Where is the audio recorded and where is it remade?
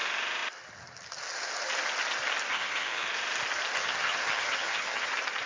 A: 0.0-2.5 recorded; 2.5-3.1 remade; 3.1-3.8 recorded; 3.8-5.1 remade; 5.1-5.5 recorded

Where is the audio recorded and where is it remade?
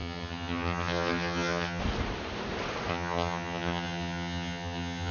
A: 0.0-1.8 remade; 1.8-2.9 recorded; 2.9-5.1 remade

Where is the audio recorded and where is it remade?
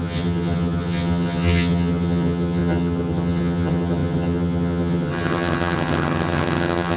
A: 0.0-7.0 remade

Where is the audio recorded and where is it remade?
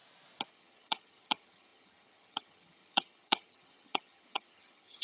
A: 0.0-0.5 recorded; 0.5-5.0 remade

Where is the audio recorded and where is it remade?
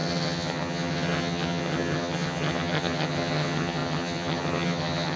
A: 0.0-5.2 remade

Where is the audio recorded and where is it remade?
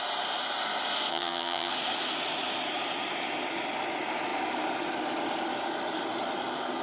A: 0.0-1.1 recorded; 1.1-1.7 remade; 1.7-6.8 recorded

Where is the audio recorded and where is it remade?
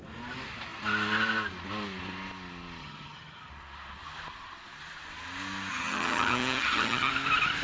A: 0.0-2.8 recorded; 2.8-3.5 remade; 3.5-5.7 recorded; 5.7-7.1 remade; 7.1-7.6 recorded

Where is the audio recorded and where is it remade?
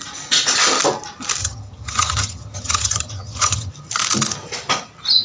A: 0.0-1.4 recorded; 1.4-3.7 remade; 3.7-5.2 recorded